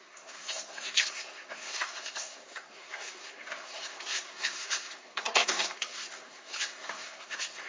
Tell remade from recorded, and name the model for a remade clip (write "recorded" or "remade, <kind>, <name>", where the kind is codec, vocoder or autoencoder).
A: remade, codec, SNAC